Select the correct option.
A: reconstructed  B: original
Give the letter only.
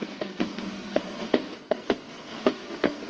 A